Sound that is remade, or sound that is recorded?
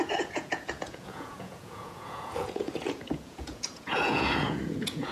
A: remade